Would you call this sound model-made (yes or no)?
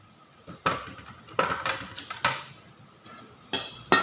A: no